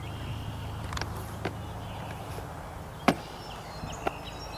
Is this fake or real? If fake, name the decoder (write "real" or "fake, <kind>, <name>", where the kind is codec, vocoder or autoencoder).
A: real